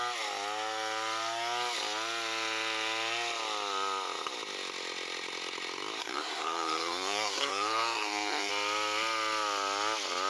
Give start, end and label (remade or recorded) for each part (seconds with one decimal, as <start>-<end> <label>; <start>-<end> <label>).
0.0-6.0 recorded; 6.0-8.5 remade; 8.5-10.3 recorded